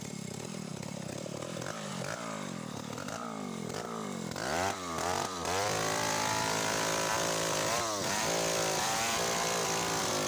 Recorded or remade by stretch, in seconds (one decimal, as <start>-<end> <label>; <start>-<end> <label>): 0.0-9.6 remade; 9.6-10.3 recorded